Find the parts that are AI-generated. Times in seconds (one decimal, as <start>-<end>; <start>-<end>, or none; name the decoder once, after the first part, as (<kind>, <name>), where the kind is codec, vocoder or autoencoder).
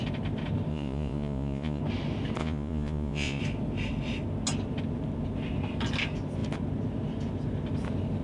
0.7-1.8 (vocoder, Vocos); 2.4-3.4